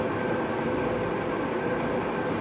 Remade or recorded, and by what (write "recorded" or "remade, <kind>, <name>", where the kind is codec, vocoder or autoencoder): recorded